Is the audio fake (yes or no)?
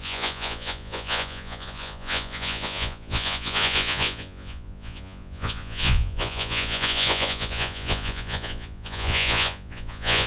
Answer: yes